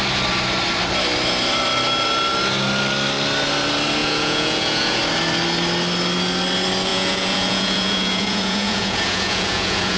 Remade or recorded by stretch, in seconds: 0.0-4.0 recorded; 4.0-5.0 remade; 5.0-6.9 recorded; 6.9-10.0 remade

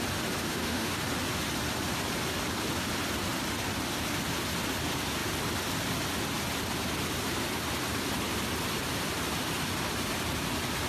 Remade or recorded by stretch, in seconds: 0.0-0.4 recorded; 0.4-1.0 remade; 1.0-10.9 recorded